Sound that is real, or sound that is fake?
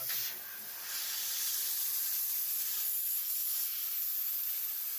real